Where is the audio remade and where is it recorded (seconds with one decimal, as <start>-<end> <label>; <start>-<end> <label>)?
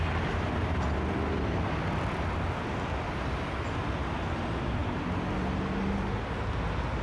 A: 0.0-7.0 recorded